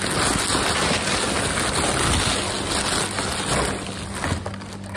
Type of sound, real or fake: real